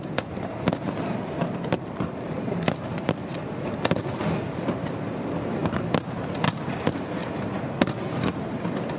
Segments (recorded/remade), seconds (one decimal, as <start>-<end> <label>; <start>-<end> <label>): 0.0-9.0 recorded